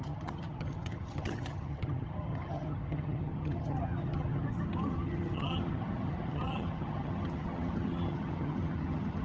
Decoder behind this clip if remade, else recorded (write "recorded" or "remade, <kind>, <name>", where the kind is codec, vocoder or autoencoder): remade, vocoder, HiFi-GAN